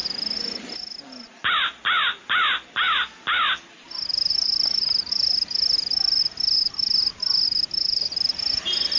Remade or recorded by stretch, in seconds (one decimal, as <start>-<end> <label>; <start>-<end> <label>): 0.0-9.0 recorded